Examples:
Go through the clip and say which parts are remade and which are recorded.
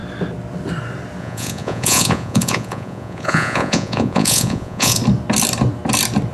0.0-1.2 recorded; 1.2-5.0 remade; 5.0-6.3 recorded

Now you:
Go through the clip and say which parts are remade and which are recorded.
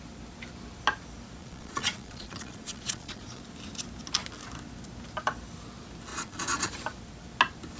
0.0-1.4 recorded; 1.4-3.4 remade; 3.4-6.1 recorded; 6.1-6.7 remade; 6.7-7.8 recorded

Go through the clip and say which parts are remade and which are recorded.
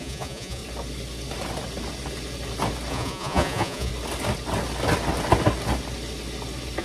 0.0-0.6 remade; 0.6-2.9 recorded; 2.9-3.9 remade; 3.9-6.8 recorded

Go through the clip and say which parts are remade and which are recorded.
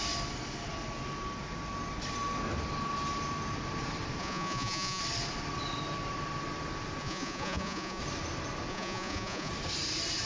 0.0-4.2 recorded; 4.2-5.0 remade; 5.0-7.0 recorded; 7.0-8.0 remade; 8.0-8.7 recorded; 8.7-9.5 remade; 9.5-10.3 recorded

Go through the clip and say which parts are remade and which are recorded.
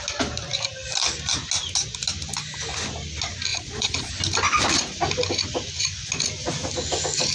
0.0-3.5 recorded; 3.5-4.1 remade; 4.1-7.3 recorded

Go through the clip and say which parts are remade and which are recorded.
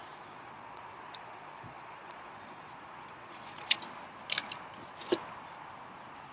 0.0-3.8 remade; 3.8-6.3 recorded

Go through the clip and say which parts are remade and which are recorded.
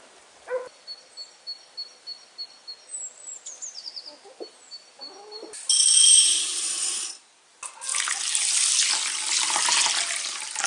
0.0-10.7 recorded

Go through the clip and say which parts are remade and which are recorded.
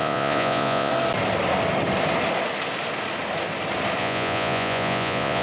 0.0-0.9 remade; 0.9-4.0 recorded; 4.0-5.4 remade